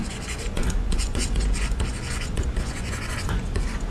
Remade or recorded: remade